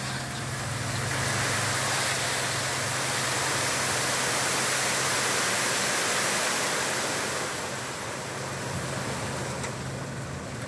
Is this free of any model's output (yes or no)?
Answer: yes